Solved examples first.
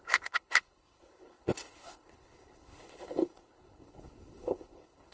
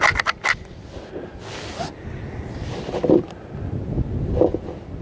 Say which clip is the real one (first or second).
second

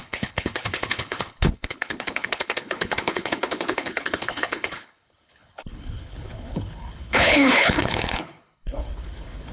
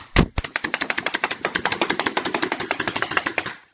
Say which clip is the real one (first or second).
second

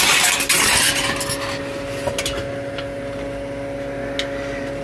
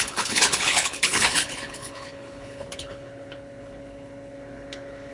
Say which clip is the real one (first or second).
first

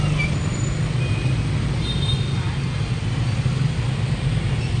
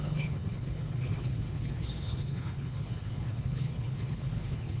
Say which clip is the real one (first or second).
first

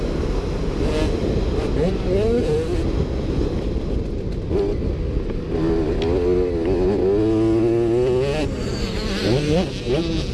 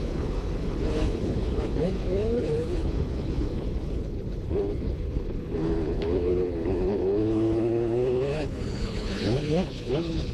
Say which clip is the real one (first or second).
first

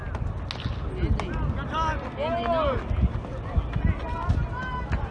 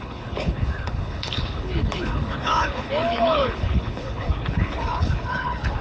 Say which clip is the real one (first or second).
first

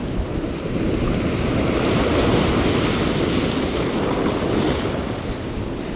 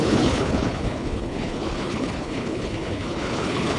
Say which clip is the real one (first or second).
first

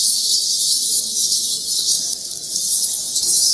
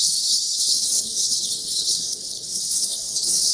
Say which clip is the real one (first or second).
first